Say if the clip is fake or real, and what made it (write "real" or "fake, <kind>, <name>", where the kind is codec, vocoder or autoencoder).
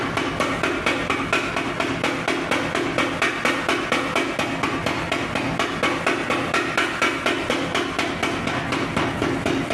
real